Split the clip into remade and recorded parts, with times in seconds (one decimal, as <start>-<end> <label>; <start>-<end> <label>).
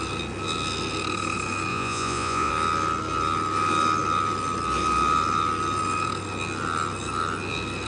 0.0-1.7 recorded; 1.7-2.5 remade; 2.5-7.9 recorded